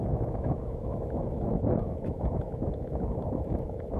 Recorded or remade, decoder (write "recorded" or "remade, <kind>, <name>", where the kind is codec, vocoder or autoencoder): remade, autoencoder, DAC-VAE